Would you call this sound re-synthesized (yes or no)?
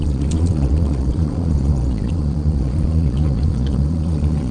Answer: yes